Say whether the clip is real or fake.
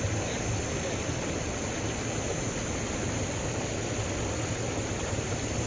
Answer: real